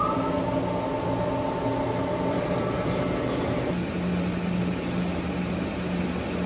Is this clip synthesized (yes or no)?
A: no